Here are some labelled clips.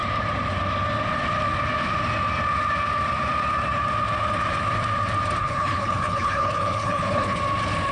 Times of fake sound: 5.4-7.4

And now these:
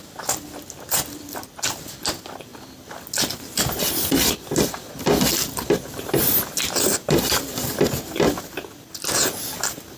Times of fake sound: none

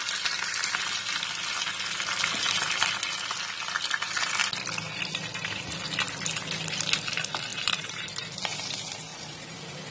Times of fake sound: 7.5-8.4; 9.1-9.9

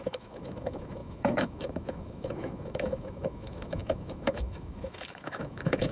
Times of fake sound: 0.0-5.9

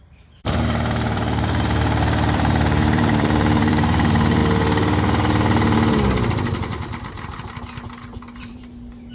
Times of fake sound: 0.0-4.4; 8.4-9.1

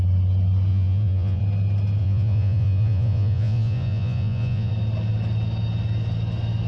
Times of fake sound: 0.7-1.4; 2.0-4.7

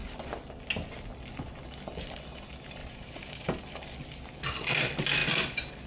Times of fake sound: 2.8-3.6

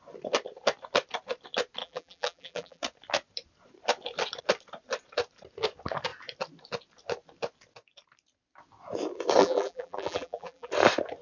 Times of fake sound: 1.8-2.8; 9.4-10.7